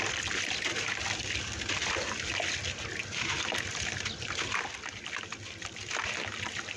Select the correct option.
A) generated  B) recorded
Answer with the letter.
B